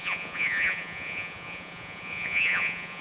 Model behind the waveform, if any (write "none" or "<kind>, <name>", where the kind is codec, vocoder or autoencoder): vocoder, Vocos